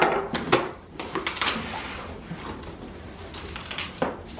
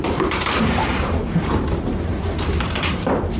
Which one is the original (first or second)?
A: first